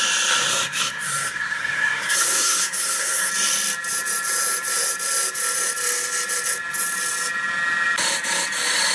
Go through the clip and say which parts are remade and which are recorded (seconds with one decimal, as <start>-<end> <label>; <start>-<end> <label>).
0.0-0.5 recorded; 0.5-3.3 remade; 3.3-8.9 recorded